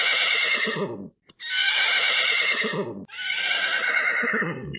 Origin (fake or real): real